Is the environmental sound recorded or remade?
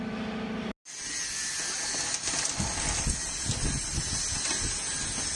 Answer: recorded